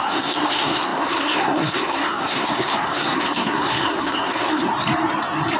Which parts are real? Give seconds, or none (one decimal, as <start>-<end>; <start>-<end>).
4.7-5.6